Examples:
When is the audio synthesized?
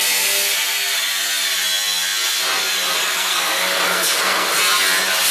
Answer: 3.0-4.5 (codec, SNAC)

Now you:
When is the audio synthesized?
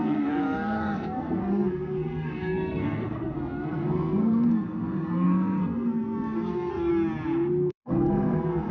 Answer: 0.0-6.9 (codec, SNAC); 7.7-8.7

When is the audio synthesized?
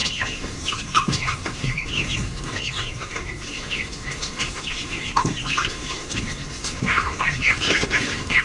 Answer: 0.0-8.4 (codec, SNAC)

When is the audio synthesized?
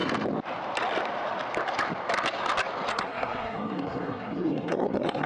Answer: 2.9-5.3 (codec, SNAC)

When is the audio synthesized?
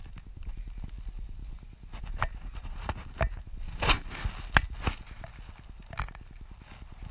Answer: none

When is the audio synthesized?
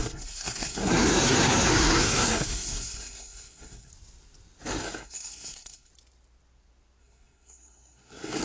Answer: 0.0-3.9 (codec, SNAC); 4.8-5.9; 7.0-8.4